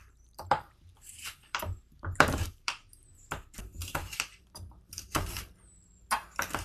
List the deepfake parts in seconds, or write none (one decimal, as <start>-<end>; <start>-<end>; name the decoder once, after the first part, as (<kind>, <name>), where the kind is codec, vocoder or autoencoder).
0.0-3.3 (vocoder, BigVGAN v2); 3.8-5.5